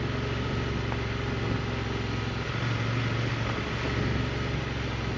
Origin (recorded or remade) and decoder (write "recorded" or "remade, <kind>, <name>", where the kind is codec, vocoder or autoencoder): recorded